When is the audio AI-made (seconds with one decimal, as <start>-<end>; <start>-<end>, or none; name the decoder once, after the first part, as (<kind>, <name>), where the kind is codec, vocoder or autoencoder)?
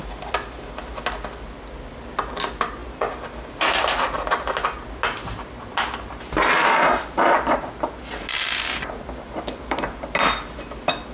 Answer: none